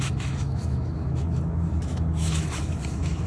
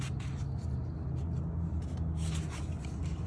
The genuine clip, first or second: second